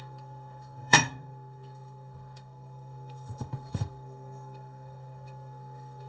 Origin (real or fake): fake